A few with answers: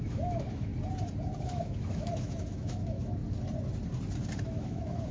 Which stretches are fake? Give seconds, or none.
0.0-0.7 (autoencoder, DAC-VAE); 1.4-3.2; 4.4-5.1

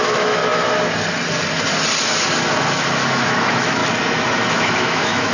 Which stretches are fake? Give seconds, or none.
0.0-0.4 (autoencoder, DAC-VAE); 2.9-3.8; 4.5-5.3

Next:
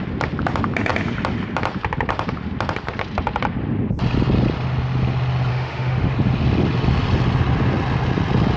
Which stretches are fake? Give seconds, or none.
5.5-6.1 (autoencoder, DAC-VAE)

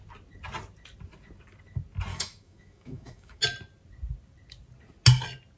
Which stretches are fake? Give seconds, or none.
2.1-3.4 (autoencoder, DAC-VAE)

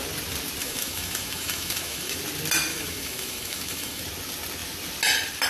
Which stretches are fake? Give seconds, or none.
0.6-2.2 (autoencoder, DAC-VAE); 2.7-4.0